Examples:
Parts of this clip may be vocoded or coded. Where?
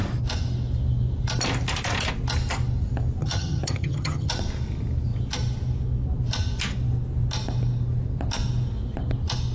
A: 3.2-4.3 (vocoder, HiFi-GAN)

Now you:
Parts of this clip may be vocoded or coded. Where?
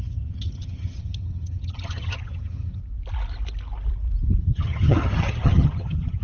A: 0.0-2.8 (vocoder, HiFi-GAN); 4.4-6.2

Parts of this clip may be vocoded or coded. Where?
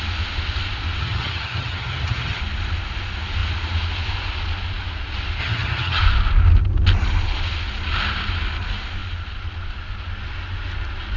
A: 1.0-2.4 (vocoder, HiFi-GAN); 5.4-6.0